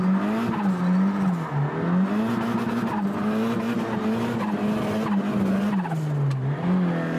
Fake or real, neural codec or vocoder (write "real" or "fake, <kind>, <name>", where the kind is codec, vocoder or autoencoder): real